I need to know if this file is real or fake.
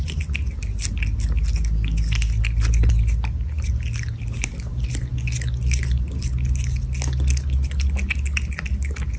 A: real